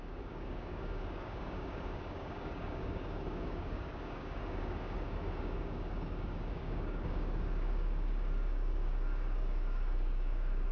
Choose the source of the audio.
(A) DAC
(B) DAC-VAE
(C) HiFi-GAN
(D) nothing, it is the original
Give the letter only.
A